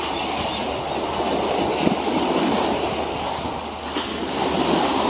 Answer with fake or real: real